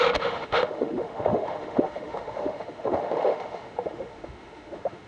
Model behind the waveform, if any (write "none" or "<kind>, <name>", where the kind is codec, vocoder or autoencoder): autoencoder, DAC-VAE